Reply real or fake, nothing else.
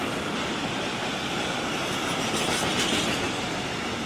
real